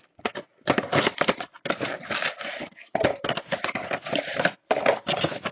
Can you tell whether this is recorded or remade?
recorded